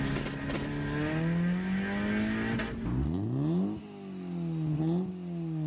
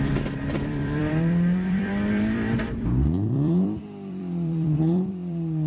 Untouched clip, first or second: first